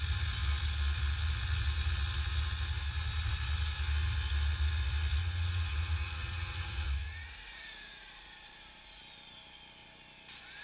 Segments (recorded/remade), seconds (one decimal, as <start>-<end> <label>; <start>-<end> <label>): 0.0-5.2 recorded; 5.2-9.0 remade; 9.0-10.6 recorded